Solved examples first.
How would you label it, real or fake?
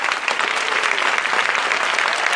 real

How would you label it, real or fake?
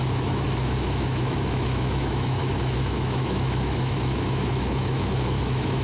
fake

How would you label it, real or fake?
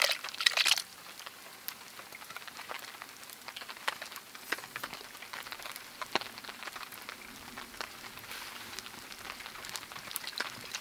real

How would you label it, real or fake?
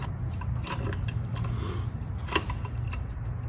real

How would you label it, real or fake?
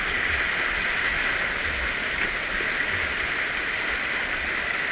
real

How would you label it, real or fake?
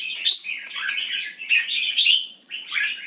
fake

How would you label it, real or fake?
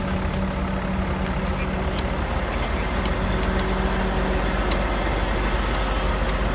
real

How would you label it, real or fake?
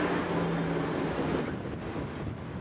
real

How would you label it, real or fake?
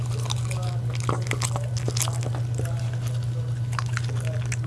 real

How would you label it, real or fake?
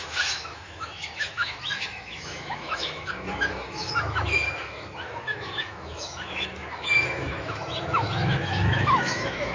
fake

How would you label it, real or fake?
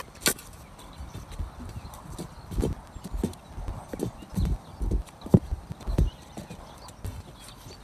real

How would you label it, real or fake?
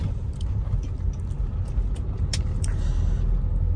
real